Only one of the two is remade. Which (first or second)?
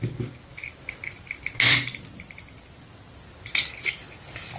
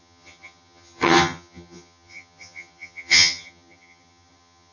second